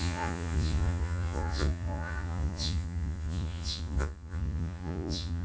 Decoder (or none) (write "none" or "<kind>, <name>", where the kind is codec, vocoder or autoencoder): vocoder, Vocos